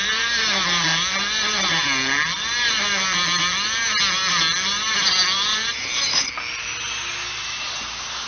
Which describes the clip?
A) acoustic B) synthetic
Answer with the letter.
A